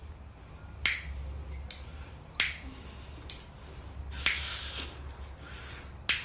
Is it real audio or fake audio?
real